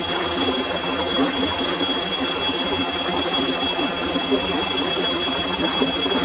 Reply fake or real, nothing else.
fake